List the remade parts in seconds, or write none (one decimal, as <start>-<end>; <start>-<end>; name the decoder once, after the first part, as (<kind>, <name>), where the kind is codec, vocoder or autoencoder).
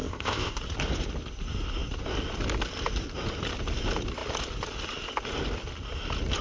0.0-0.6 (codec, ZipCodec)